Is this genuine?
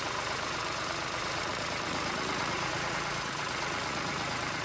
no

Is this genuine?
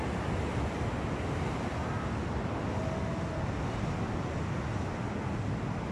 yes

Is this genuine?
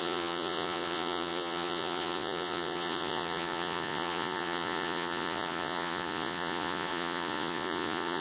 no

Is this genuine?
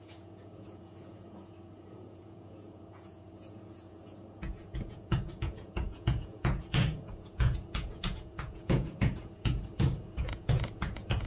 no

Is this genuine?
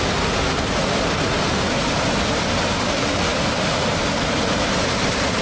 yes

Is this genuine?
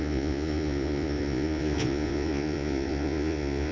no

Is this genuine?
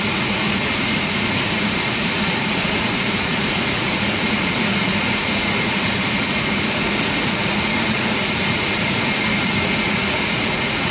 no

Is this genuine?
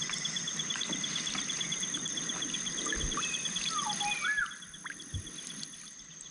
yes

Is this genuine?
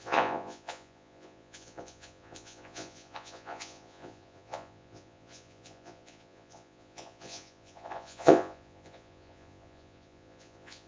no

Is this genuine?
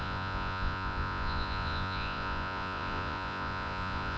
no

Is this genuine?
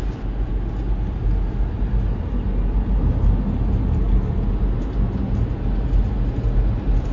yes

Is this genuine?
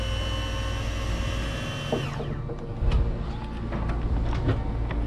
yes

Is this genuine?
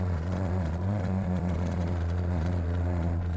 no